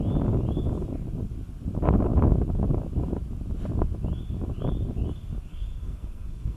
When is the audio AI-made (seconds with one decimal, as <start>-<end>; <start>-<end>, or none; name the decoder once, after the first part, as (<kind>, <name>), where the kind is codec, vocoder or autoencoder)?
5.5-6.6 (codec, SNAC)